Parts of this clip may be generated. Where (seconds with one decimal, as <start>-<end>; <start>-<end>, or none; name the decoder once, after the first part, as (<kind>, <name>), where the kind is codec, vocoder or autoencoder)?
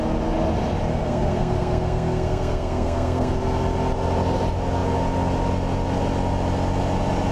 0.9-3.3 (codec, SNAC)